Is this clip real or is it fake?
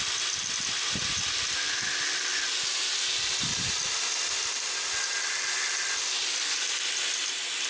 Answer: real